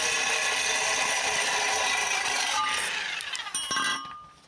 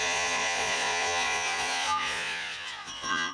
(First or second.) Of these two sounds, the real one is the first